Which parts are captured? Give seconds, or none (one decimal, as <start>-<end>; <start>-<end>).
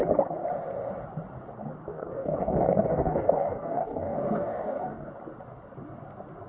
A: 0.0-1.9; 5.1-6.5